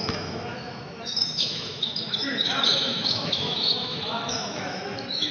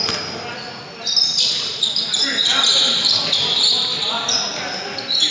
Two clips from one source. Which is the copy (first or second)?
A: first